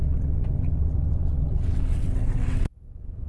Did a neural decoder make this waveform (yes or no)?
yes